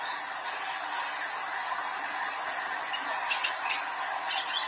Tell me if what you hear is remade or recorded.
recorded